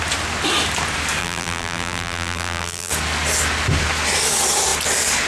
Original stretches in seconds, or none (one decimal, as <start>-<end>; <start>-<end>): 0.0-1.2; 2.9-5.3

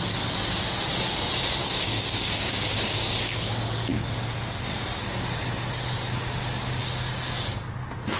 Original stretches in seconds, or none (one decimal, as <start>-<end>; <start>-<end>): 0.0-1.6; 3.2-8.2

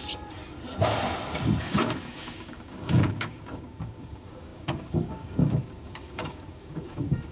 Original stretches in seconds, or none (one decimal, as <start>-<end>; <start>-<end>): 0.0-1.6

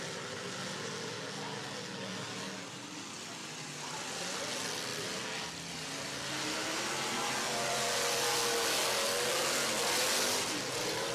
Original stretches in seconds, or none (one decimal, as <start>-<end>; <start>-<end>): 0.0-3.4; 4.0-11.1

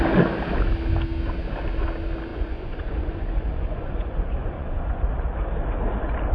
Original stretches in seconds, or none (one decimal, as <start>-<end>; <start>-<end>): 0.0-2.3; 5.1-6.3

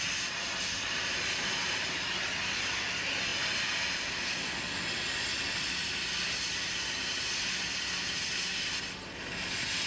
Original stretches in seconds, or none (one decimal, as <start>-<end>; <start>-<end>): 0.0-9.9